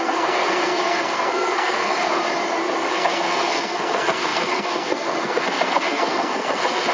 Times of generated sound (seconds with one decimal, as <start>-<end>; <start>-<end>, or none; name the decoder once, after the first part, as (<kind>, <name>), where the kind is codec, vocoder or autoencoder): 0.0-2.2 (codec, SNAC); 2.9-6.9